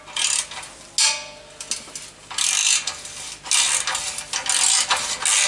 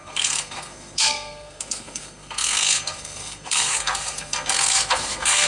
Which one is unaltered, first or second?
first